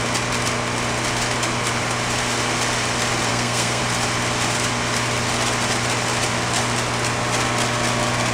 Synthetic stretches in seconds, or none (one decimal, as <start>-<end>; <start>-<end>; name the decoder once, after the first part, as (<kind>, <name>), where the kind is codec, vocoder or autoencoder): 3.3-3.8 (codec, SNAC)